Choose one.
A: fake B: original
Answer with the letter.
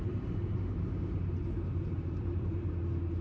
B